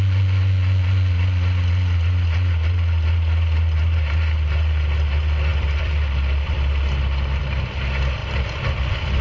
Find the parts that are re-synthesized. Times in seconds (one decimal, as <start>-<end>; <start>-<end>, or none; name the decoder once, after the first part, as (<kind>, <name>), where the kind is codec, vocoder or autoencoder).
5.5-7.4 (vocoder, BigVGAN v2); 8.2-9.2